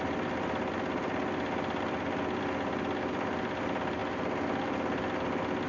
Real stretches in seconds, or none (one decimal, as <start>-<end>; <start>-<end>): 0.0-5.7